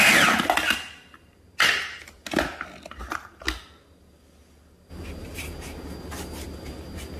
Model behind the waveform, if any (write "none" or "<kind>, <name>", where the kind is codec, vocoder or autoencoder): none